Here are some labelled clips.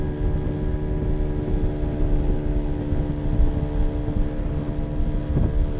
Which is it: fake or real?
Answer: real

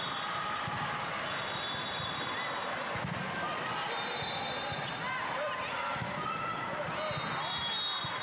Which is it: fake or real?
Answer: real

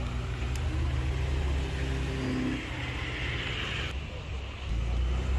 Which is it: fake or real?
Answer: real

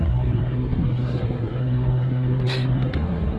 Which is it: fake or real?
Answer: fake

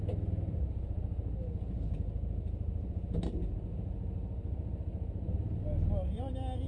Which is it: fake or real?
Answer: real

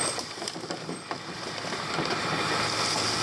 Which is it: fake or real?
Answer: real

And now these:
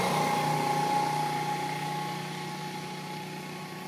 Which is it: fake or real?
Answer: real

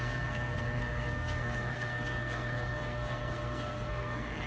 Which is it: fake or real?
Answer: fake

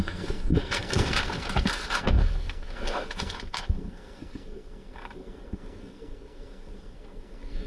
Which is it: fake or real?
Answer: fake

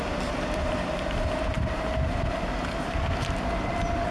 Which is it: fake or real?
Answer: real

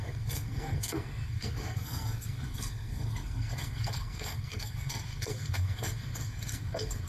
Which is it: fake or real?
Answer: fake